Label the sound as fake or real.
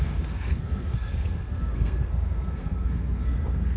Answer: fake